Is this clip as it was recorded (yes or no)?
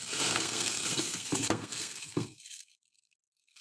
no